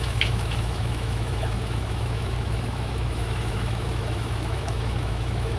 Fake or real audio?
fake